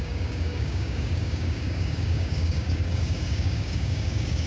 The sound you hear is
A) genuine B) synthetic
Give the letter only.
B